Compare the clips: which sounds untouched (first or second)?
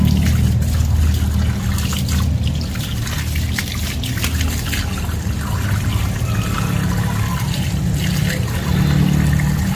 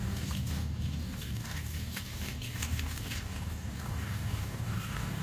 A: first